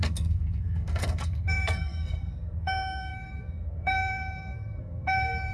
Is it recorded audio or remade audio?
remade